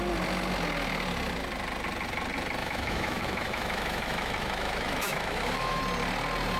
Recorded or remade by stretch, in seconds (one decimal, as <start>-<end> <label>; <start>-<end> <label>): 0.0-2.6 recorded; 2.6-5.8 remade; 5.8-6.6 recorded